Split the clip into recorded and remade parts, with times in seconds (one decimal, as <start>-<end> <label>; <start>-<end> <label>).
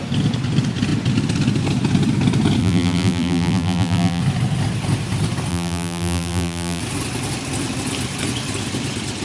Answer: 0.0-2.6 recorded; 2.6-4.2 remade; 4.2-5.5 recorded; 5.5-6.8 remade; 6.8-9.2 recorded